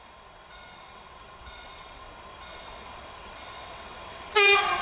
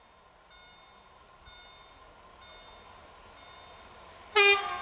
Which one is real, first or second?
second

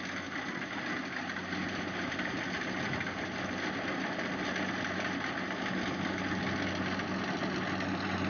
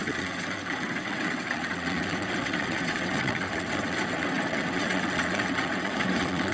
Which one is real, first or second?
first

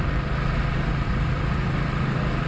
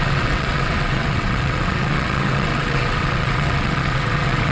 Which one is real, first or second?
first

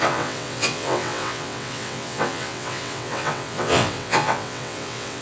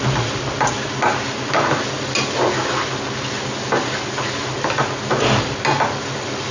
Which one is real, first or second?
second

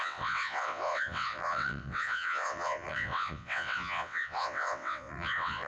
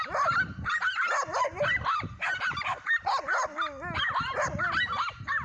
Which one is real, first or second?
second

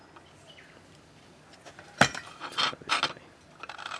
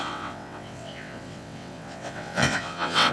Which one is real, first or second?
first